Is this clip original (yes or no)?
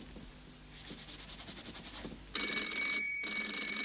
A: yes